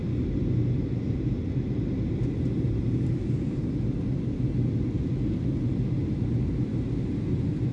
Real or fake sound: real